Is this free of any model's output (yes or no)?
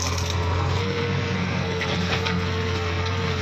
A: no